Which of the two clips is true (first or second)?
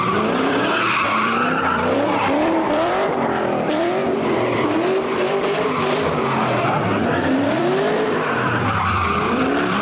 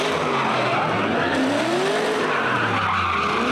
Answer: second